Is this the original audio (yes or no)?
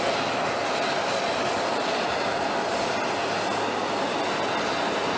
yes